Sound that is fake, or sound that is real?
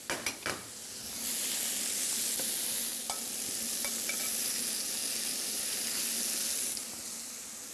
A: real